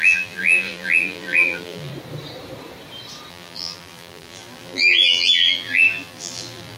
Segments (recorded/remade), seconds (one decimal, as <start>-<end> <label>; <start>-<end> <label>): 0.0-1.9 remade; 1.9-3.3 recorded; 3.3-6.8 remade